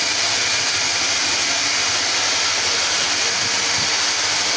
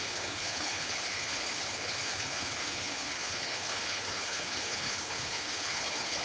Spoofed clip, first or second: second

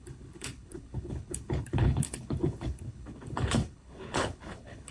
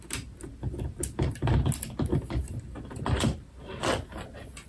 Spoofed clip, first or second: first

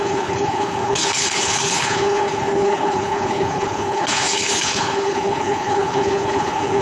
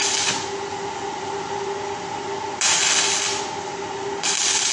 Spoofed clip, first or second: first